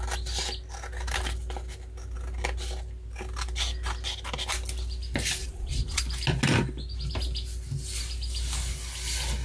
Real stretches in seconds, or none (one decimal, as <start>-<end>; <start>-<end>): 0.0-5.4; 6.0-9.4